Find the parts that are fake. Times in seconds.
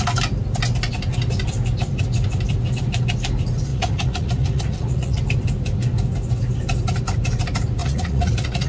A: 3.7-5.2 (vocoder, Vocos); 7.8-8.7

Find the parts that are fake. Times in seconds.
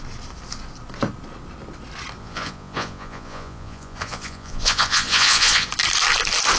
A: 2.2-5.7 (vocoder, Vocos)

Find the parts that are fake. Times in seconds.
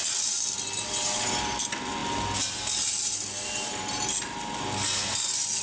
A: none